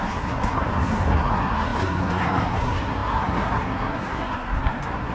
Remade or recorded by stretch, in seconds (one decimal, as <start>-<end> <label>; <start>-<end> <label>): 0.0-5.1 remade